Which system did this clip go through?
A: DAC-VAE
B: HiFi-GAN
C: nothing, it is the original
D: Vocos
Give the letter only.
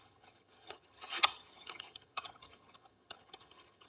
B